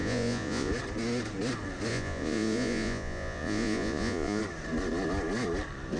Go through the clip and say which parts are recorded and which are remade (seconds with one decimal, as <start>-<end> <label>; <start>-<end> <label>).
0.0-0.7 remade; 0.7-1.9 recorded; 1.9-4.4 remade; 4.4-6.0 recorded